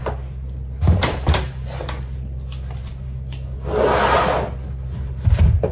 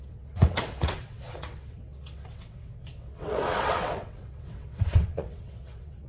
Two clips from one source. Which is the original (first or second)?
first